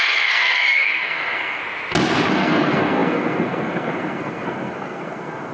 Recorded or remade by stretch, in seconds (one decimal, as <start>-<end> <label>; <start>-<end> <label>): 0.0-1.6 remade; 1.6-2.3 recorded; 2.3-5.5 remade